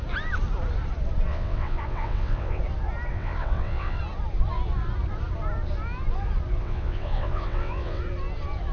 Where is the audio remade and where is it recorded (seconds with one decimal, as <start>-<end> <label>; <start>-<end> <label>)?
0.0-1.3 recorded; 1.3-2.6 remade; 2.6-3.1 recorded; 3.1-4.0 remade; 4.0-6.6 recorded; 6.6-8.0 remade; 8.0-8.7 recorded